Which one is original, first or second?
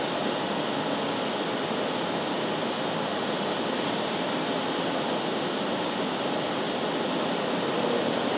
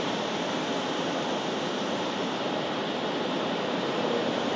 first